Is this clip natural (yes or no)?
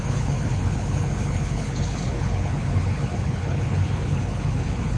no